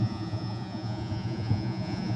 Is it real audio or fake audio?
fake